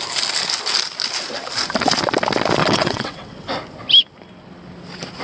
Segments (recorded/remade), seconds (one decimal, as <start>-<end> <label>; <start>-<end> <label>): 0.0-2.6 recorded; 2.6-3.5 remade; 3.5-5.2 recorded